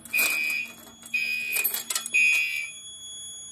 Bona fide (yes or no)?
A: yes